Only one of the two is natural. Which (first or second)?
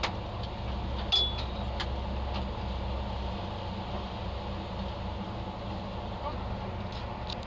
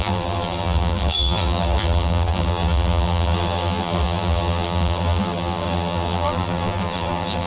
first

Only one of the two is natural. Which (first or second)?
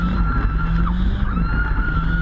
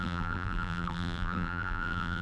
first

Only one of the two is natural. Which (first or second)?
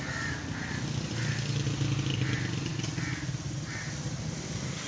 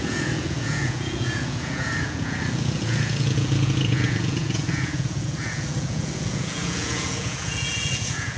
first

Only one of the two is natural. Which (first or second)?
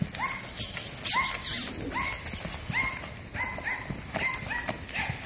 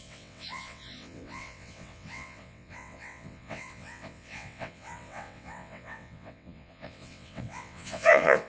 first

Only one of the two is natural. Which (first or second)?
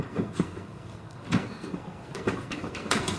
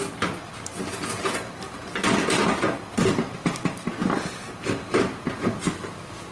second